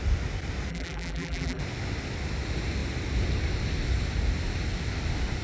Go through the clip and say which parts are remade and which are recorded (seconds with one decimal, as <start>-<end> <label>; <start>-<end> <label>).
0.0-0.7 recorded; 0.7-1.6 remade; 1.6-5.4 recorded